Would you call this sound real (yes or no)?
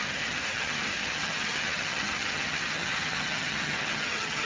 no